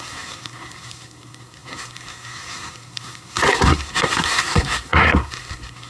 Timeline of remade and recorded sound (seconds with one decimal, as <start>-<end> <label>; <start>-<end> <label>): 0.0-5.9 remade